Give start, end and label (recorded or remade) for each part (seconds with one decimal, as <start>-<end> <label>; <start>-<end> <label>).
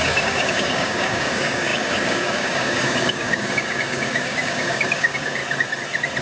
0.0-5.4 remade; 5.4-6.2 recorded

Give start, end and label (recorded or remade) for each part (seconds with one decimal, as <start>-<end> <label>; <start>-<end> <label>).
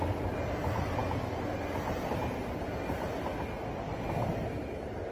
0.0-5.1 recorded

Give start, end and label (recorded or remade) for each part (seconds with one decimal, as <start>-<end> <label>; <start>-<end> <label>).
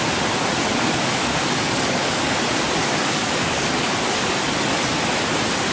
0.0-0.7 recorded; 0.7-2.4 remade; 2.4-2.8 recorded; 2.8-4.2 remade; 4.2-5.7 recorded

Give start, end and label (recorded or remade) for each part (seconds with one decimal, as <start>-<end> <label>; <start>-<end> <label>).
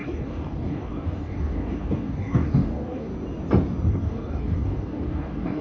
0.0-3.1 remade; 3.1-3.9 recorded; 3.9-5.6 remade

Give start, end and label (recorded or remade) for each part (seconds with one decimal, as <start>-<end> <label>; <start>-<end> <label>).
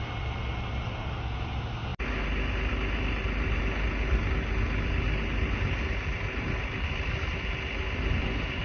0.0-8.6 recorded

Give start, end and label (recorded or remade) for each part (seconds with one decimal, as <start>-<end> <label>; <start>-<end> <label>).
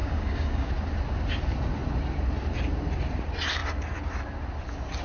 0.0-0.7 remade; 0.7-5.0 recorded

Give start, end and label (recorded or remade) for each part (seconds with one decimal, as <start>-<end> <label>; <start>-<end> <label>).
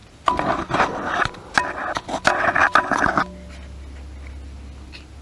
0.0-5.2 recorded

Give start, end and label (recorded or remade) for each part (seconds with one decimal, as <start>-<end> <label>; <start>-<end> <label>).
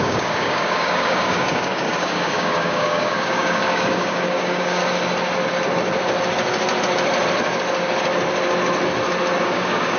0.0-4.8 remade; 4.8-9.4 recorded; 9.4-10.0 remade